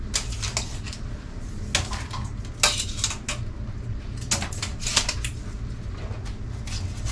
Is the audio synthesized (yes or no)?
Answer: no